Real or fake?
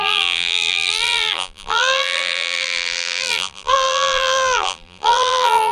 fake